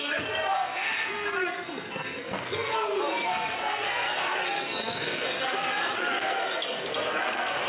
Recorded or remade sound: remade